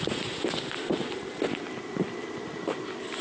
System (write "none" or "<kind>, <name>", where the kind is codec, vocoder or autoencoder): none